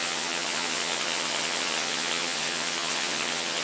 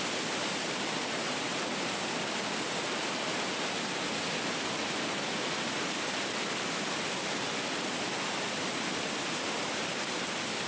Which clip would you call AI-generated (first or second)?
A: first